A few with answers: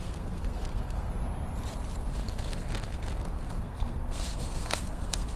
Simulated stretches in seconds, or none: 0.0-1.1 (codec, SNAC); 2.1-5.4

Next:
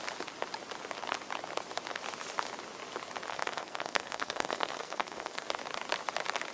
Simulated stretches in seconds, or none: 3.3-5.5 (codec, SNAC)

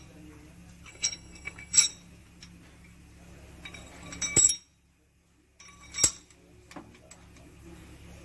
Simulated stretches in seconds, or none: 0.9-1.9 (codec, SNAC)

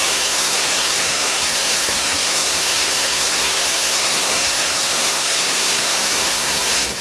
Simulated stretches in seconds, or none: 0.0-7.0 (codec, SNAC)

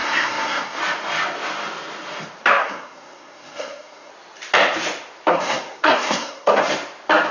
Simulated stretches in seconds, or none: 0.0-0.8 (codec, SNAC); 2.6-4.1; 5.3-6.6